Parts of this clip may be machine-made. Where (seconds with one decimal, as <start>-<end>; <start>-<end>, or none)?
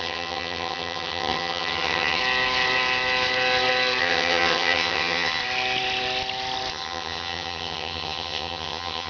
0.0-2.2; 4.0-5.4; 6.7-9.1